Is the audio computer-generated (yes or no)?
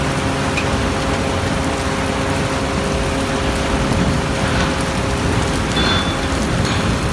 no